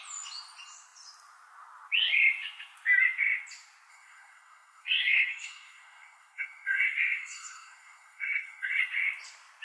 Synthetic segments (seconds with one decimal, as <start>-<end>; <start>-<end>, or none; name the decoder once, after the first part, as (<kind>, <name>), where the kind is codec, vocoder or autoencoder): 3.9-8.8 (codec, SNAC)